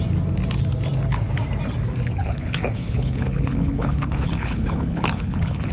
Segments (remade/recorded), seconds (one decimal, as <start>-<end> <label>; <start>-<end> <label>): 0.0-2.2 recorded; 2.2-5.7 remade